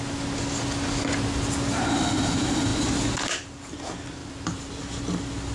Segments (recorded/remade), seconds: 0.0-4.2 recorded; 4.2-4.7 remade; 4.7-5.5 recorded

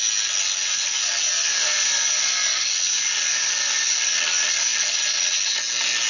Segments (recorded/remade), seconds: 0.0-6.1 recorded

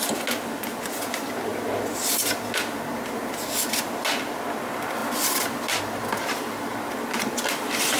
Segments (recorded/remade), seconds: 0.0-8.0 recorded

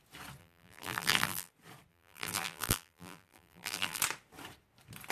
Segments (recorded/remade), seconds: 0.0-0.4 recorded; 0.4-1.5 remade; 1.5-1.9 recorded; 1.9-4.0 remade; 4.0-5.1 recorded

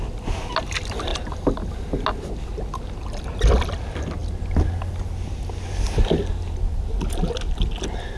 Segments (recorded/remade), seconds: 0.0-8.2 recorded

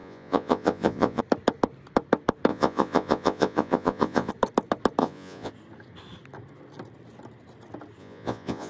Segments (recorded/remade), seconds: 0.0-1.2 remade; 1.2-2.5 recorded; 2.5-4.3 remade; 4.3-5.0 recorded; 5.0-5.5 remade; 5.5-8.0 recorded; 8.0-8.7 remade